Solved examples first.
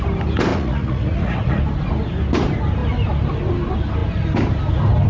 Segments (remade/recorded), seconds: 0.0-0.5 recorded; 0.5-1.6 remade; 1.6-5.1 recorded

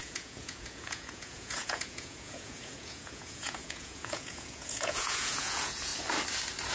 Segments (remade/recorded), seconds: 0.0-5.9 remade; 5.9-6.7 recorded